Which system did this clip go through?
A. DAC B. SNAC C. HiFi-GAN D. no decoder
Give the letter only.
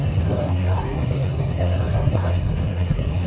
B